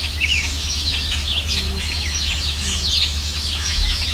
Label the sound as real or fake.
fake